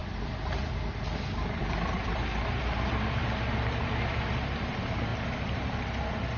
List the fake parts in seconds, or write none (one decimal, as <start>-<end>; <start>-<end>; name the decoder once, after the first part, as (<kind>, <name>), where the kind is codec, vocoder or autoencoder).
0.0-5.1 (vocoder, BigVGAN v2); 5.8-6.4